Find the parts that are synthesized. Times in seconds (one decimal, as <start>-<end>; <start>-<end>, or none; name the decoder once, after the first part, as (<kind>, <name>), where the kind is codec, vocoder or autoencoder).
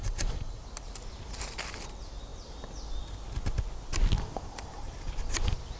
0.0-0.6 (vocoder, WaveNeXt)